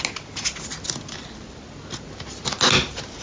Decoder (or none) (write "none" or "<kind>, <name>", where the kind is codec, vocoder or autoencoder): none